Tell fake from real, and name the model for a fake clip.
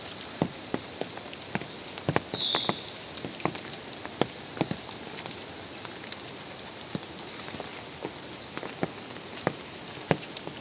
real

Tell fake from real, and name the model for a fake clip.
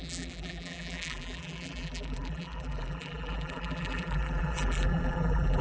fake, vocoder, BigVGAN v2